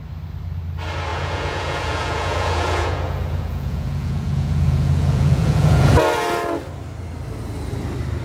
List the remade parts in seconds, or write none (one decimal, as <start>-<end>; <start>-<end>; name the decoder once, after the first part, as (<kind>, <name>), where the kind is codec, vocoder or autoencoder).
1.1-5.9 (vocoder, Vocos)